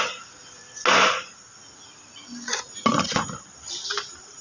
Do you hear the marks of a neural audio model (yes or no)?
no